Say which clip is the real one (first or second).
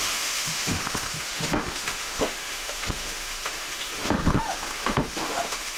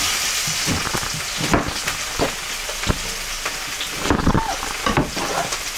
second